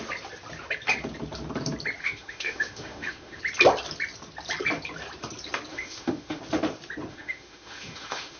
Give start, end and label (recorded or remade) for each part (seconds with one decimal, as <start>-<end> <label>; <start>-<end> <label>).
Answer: 0.0-2.0 recorded; 2.0-3.4 remade; 3.4-5.7 recorded; 5.7-6.4 remade; 6.4-7.1 recorded; 7.1-8.4 remade